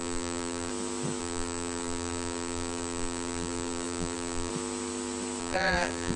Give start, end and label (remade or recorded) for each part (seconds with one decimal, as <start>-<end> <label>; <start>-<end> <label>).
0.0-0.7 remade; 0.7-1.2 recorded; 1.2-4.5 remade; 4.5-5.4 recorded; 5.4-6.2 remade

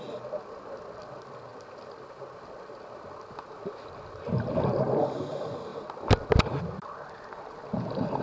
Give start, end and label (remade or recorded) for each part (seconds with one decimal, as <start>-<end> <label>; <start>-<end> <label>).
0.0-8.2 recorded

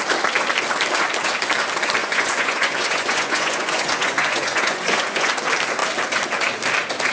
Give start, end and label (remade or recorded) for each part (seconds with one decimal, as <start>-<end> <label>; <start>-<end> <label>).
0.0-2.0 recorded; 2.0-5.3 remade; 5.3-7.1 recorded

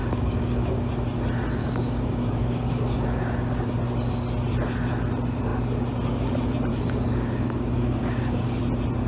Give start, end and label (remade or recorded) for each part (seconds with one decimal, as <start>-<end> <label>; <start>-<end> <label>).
0.0-0.9 remade; 0.9-1.6 recorded; 1.6-3.5 remade; 3.5-6.7 recorded; 6.7-8.6 remade; 8.6-9.1 recorded

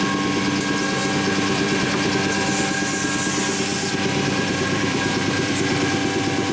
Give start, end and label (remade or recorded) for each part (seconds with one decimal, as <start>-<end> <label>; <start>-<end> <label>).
0.0-1.0 recorded; 1.0-2.1 remade; 2.1-3.7 recorded; 3.7-5.6 remade; 5.6-6.5 recorded